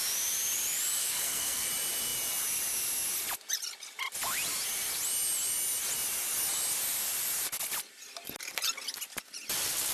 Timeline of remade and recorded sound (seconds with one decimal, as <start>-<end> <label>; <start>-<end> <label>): 0.0-1.0 recorded; 1.0-1.7 remade; 1.7-9.9 recorded